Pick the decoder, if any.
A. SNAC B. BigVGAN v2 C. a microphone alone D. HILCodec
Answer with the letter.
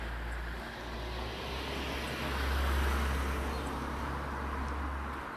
C